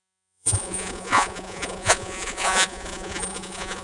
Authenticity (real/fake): fake